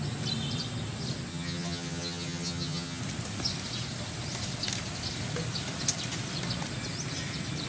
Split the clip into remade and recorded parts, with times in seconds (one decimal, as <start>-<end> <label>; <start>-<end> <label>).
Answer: 0.0-1.3 recorded; 1.3-3.0 remade; 3.0-7.7 recorded